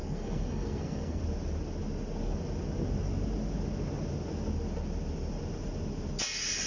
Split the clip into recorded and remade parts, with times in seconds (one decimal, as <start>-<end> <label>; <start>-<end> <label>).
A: 0.0-1.2 remade; 1.2-6.7 recorded